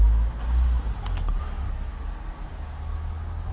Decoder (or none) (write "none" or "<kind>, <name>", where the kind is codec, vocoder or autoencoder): none